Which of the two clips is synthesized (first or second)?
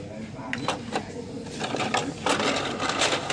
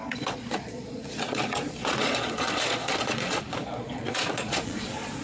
second